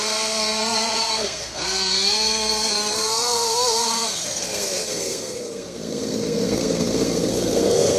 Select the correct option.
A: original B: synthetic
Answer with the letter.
B